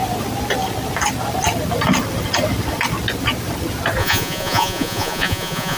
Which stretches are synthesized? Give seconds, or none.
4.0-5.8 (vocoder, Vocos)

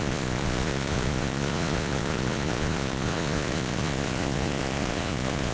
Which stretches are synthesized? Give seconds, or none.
0.0-5.5 (vocoder, Vocos)

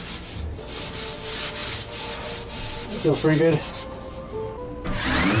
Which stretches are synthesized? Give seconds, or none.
none

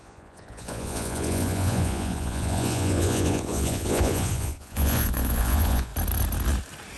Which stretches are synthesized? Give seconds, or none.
0.0-5.9 (vocoder, Vocos)

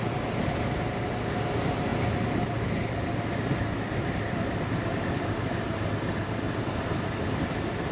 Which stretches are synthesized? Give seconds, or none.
none

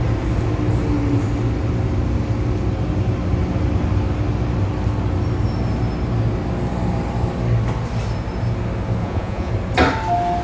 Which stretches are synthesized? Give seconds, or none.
9.0-9.5 (vocoder, Vocos)